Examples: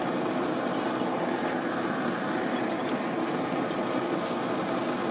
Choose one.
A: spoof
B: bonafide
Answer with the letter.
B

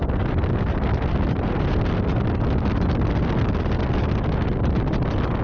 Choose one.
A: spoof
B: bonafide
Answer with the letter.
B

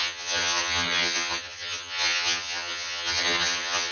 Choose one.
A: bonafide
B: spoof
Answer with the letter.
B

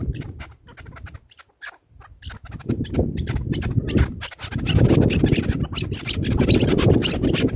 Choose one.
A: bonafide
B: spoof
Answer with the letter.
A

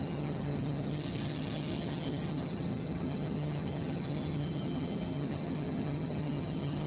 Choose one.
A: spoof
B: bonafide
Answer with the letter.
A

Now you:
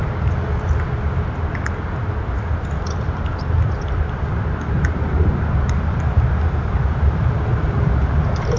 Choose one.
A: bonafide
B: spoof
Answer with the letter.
A